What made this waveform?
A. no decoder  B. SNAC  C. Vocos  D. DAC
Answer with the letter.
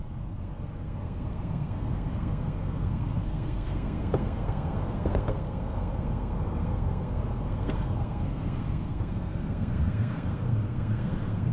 B